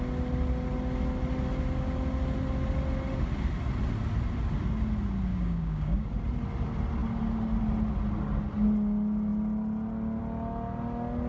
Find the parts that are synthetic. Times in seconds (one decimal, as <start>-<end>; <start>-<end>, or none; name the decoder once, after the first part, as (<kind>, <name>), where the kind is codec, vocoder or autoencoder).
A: 5.3-6.1 (codec, DAC)